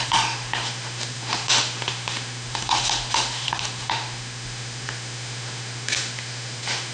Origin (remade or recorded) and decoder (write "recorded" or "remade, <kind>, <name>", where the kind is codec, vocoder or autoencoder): remade, autoencoder, DAC-VAE